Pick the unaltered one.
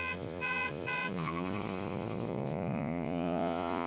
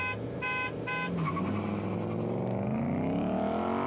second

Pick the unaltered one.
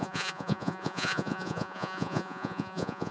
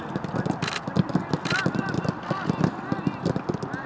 second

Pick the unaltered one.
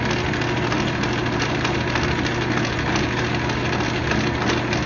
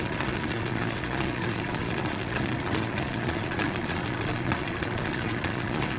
first